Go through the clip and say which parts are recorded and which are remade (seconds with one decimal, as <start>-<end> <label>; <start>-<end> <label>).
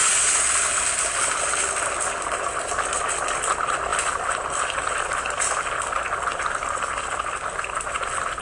0.0-3.9 recorded; 3.9-4.9 remade; 4.9-8.4 recorded